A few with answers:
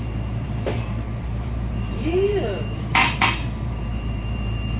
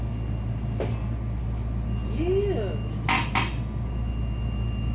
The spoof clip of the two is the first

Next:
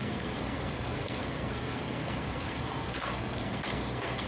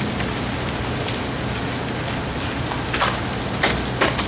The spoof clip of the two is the first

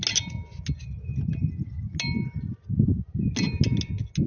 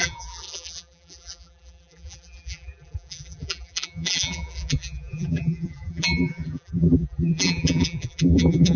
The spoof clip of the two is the second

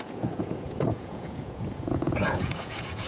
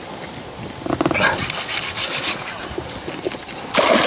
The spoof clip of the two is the first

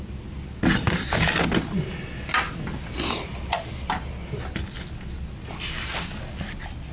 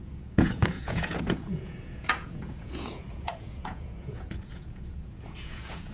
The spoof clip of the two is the second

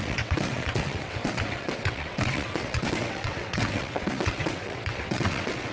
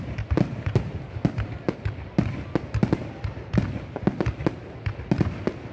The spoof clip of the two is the first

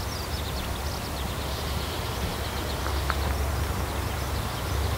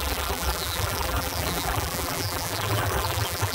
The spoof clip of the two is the second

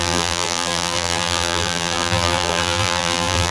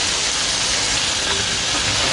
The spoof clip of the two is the first